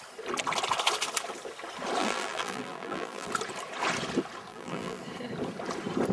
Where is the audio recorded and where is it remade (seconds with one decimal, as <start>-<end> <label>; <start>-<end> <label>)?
0.0-2.0 recorded; 2.0-3.3 remade; 3.3-4.5 recorded; 4.5-5.0 remade; 5.0-6.1 recorded